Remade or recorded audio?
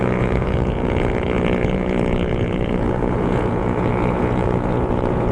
remade